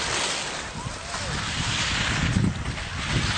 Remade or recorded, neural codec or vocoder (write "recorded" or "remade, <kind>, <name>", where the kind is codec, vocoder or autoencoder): recorded